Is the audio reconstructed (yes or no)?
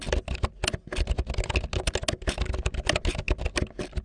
no